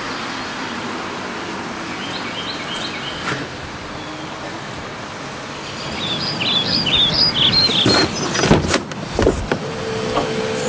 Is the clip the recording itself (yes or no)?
yes